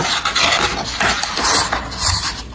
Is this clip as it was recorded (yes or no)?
yes